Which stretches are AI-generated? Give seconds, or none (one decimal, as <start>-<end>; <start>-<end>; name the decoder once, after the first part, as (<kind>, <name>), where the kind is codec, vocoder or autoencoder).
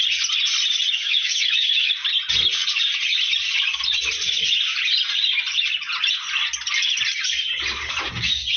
1.0-1.9 (autoencoder, DAC-VAE)